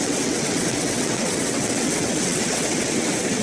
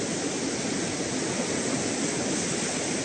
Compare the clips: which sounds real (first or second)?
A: second